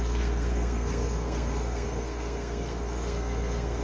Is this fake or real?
fake